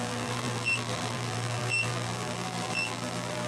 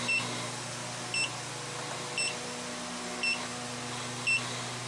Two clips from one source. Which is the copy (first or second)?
first